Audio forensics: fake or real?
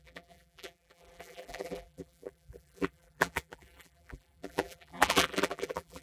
fake